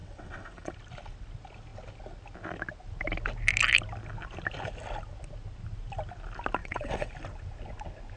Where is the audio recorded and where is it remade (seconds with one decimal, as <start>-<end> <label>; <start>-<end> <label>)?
0.0-0.7 remade; 0.7-6.6 recorded; 6.6-7.1 remade; 7.1-8.2 recorded